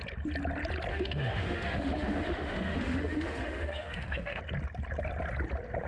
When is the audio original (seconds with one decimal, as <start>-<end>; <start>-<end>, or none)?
0.0-0.9; 4.4-5.9